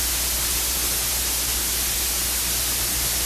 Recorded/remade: recorded